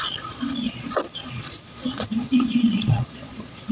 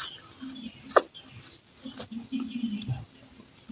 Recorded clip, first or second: second